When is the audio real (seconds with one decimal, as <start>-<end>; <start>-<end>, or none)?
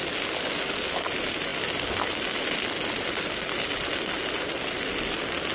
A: 0.0-5.5